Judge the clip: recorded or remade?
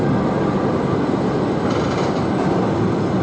recorded